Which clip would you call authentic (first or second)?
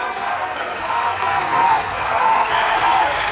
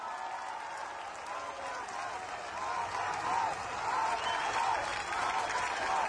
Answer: second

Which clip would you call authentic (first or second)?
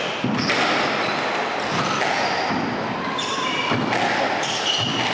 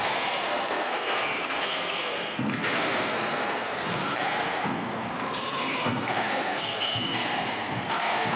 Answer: first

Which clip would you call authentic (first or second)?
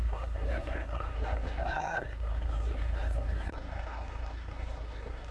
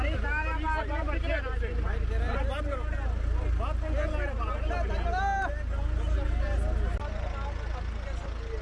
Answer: second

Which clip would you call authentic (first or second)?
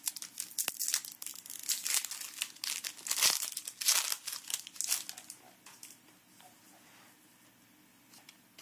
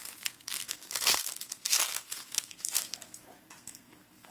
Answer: first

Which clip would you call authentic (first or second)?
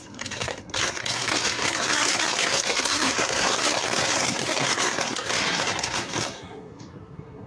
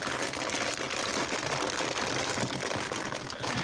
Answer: second